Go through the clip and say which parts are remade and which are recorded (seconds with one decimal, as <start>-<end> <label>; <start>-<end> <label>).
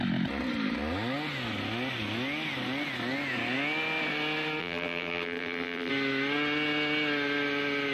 0.0-4.6 recorded; 4.6-5.9 remade; 5.9-7.9 recorded